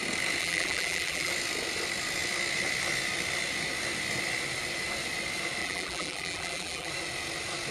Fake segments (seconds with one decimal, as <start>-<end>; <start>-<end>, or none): 0.4-1.3; 5.6-6.9